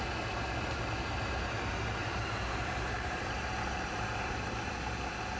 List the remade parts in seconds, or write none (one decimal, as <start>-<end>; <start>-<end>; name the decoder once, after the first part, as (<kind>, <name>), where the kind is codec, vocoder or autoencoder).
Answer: 2.0-4.3 (vocoder, BigVGAN v2)